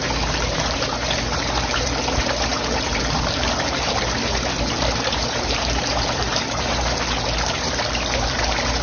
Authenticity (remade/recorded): remade